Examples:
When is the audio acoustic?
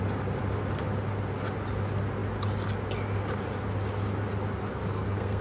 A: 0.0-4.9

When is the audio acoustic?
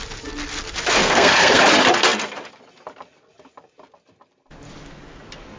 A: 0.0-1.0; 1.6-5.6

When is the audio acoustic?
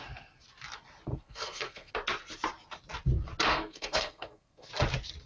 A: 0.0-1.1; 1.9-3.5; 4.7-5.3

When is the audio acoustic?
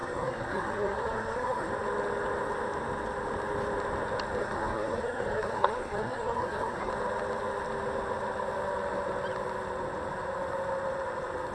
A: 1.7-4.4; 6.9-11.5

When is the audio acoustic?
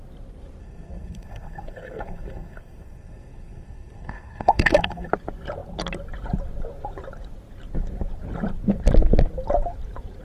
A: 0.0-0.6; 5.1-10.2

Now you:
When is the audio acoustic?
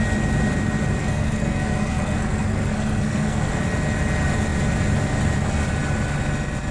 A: 0.0-1.0; 3.6-6.7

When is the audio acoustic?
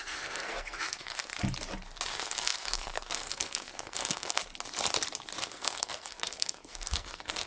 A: 1.3-2.1; 4.4-5.4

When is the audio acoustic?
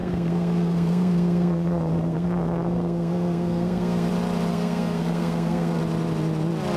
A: 4.1-4.5; 5.8-6.8